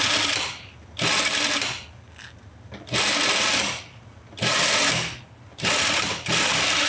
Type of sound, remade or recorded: recorded